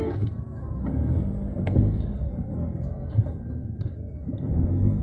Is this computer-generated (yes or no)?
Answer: yes